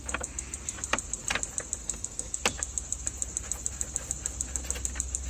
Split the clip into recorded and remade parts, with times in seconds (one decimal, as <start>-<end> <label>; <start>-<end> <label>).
0.0-1.8 recorded; 1.8-2.4 remade; 2.4-5.3 recorded